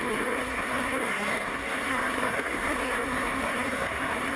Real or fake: fake